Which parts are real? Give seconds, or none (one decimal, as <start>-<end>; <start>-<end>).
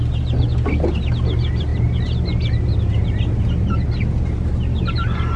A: 0.0-5.4